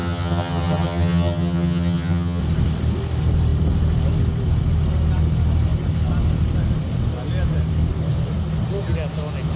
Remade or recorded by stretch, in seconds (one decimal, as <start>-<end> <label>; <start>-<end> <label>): 0.0-2.4 remade; 2.4-9.6 recorded

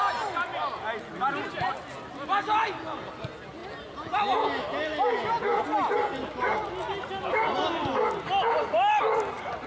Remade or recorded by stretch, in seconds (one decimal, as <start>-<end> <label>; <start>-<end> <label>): 0.0-9.7 recorded

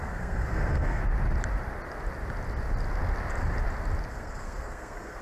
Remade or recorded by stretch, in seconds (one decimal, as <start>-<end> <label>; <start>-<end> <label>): 0.0-1.0 remade; 1.0-4.1 recorded; 4.1-5.2 remade

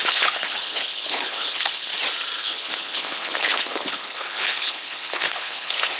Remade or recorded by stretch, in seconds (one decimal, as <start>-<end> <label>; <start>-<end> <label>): 0.0-1.9 remade; 1.9-2.4 recorded; 2.4-6.0 remade

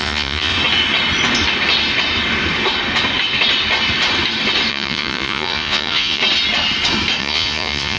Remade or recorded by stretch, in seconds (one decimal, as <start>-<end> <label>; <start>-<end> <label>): 0.0-0.5 remade; 0.5-4.7 recorded; 4.7-6.2 remade; 6.2-7.2 recorded; 7.2-8.0 remade

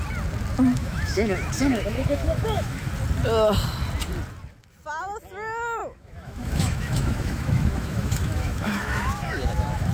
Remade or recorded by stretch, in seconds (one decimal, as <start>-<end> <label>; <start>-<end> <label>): 0.0-0.8 recorded; 0.8-2.9 remade; 2.9-5.8 recorded; 5.8-9.9 remade

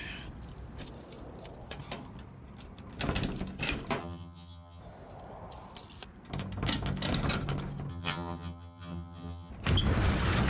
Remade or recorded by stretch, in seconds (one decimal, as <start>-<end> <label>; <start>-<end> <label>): 0.0-4.0 recorded; 4.0-4.8 remade; 4.8-7.9 recorded; 7.9-9.5 remade; 9.5-10.5 recorded

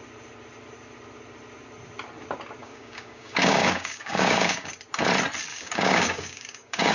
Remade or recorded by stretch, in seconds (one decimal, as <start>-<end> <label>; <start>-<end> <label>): 0.0-2.6 recorded; 2.6-4.7 remade; 4.7-5.5 recorded; 5.5-6.9 remade